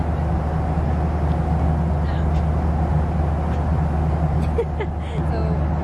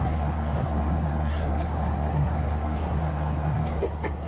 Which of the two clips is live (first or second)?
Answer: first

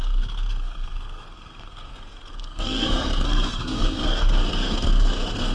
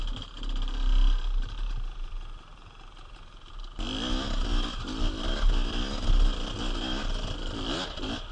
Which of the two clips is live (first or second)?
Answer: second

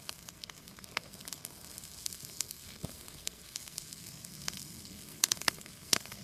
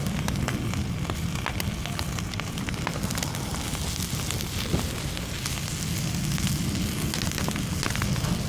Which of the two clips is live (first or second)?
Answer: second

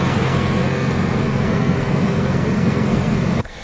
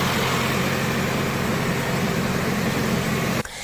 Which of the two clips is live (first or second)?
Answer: second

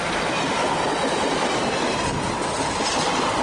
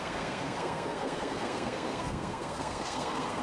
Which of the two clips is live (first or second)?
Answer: first